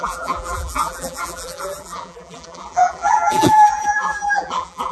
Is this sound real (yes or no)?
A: no